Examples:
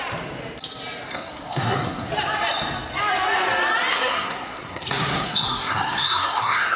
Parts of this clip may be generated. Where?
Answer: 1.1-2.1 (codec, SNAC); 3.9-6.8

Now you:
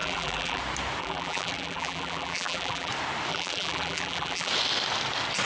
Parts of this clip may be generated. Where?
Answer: 0.0-0.6 (vocoder, BigVGAN v2); 1.0-2.9; 3.3-4.5

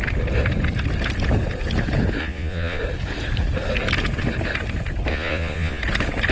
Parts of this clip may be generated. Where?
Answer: 2.2-2.8 (vocoder, Vocos); 5.1-5.8